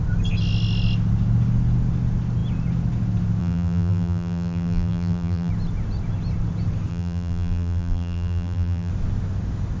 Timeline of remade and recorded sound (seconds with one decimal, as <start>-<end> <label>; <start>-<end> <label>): 0.0-3.4 recorded; 3.4-5.5 remade; 5.5-6.9 recorded; 6.9-8.9 remade; 8.9-9.8 recorded